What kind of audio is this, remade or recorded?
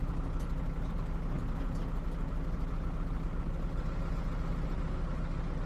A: recorded